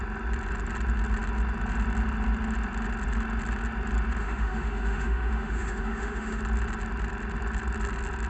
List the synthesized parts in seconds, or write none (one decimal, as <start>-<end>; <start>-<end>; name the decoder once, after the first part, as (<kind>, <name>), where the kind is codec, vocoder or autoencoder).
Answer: 4.2-6.4 (autoencoder, DAC-VAE)